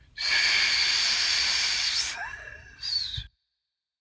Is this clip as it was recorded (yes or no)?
yes